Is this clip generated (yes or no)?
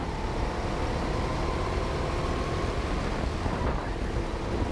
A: no